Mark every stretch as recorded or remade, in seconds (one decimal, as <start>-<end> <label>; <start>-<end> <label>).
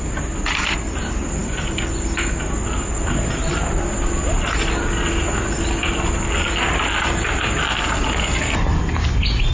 0.0-9.5 recorded